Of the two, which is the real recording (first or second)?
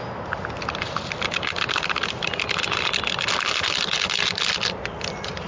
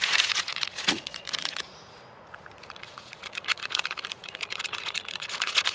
first